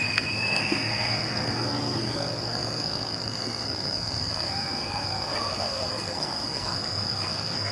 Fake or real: fake